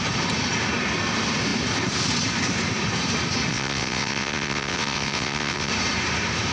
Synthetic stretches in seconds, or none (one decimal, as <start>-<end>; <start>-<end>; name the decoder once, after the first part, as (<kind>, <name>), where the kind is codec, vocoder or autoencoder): 3.5-5.7 (vocoder, WaveNeXt)